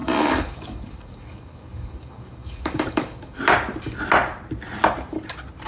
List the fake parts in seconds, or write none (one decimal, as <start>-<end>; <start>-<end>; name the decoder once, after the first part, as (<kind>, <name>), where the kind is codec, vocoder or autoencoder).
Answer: 0.0-3.4 (codec, DAC)